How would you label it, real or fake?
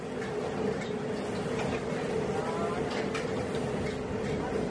real